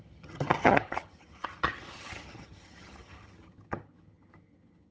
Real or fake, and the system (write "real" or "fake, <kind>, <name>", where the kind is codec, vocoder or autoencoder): fake, vocoder, HiFi-GAN